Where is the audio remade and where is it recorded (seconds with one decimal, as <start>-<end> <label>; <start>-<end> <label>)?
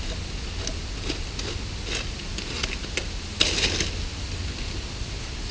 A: 0.0-5.5 recorded